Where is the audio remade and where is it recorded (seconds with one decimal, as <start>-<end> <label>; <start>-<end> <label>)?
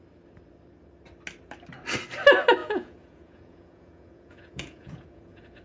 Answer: 0.0-2.6 recorded; 2.6-5.6 remade